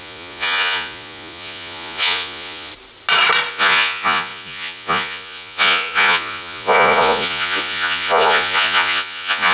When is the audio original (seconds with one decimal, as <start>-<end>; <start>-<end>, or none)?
2.7-3.5